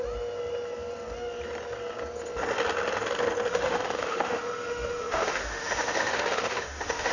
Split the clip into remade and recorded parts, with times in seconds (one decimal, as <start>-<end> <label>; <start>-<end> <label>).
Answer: 0.0-3.5 recorded; 3.5-7.1 remade